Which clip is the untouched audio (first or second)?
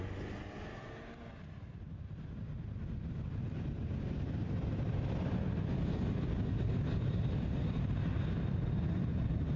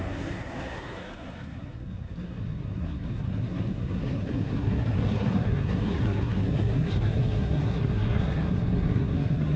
first